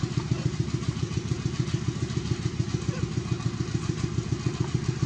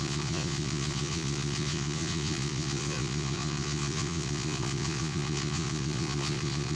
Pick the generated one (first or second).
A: second